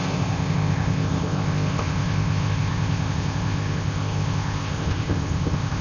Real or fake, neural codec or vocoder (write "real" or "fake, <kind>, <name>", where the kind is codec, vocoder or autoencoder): fake, codec, ZipCodec